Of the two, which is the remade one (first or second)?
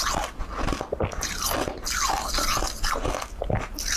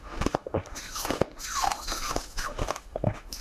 second